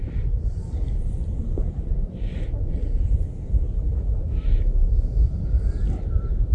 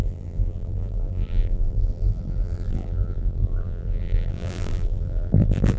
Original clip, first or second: first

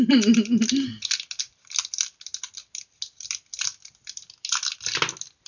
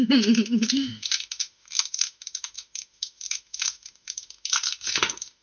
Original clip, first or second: first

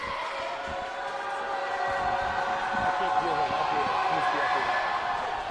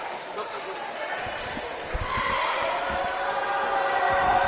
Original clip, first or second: first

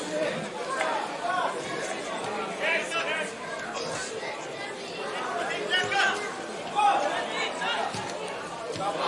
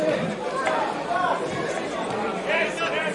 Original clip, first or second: first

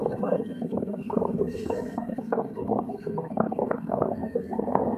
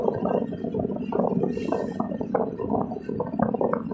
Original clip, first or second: second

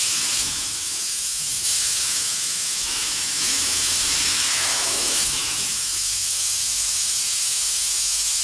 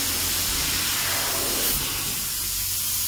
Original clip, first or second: second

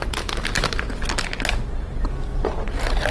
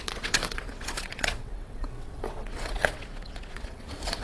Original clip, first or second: first